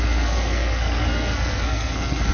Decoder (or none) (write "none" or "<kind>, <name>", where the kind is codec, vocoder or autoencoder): codec, SNAC